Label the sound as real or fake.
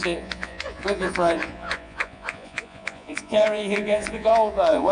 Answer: fake